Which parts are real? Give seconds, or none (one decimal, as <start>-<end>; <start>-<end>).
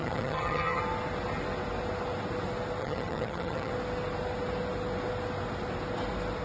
0.8-2.8; 3.7-6.4